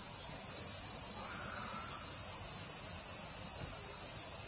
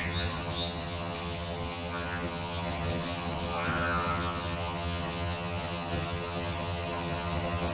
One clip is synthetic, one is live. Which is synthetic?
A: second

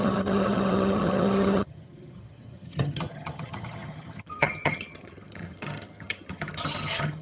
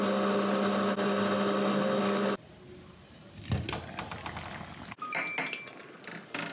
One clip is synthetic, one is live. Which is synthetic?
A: first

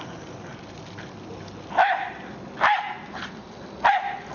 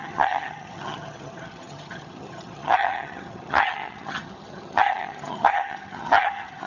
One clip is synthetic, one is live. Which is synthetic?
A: second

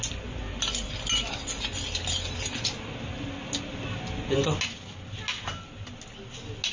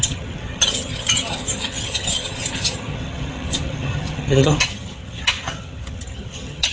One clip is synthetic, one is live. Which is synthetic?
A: second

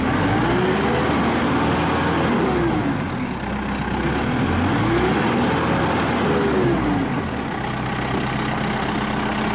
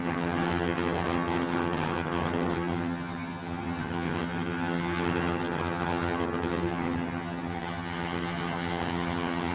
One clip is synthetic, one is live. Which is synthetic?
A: second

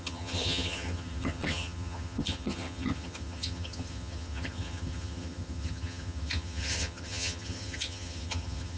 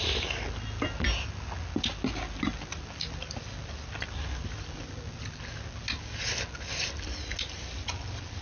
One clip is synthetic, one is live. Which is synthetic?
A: first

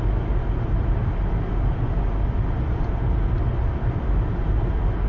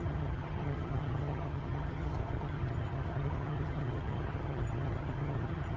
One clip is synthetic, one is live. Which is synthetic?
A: second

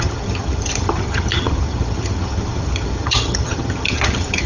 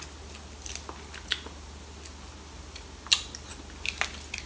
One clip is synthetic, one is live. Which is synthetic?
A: first